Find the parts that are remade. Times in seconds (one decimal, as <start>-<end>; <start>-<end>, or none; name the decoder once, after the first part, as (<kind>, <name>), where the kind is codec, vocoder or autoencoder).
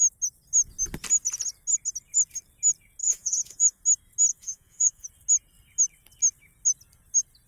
3.0-3.8 (vocoder, Vocos); 4.3-5.1